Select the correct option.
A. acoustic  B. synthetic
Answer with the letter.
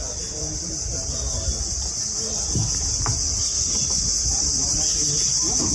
A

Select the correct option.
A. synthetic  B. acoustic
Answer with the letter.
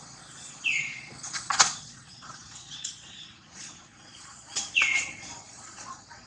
A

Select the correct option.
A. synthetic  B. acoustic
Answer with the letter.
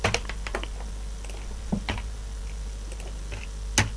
B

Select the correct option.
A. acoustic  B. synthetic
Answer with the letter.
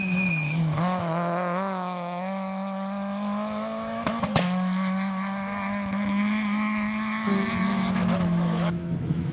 B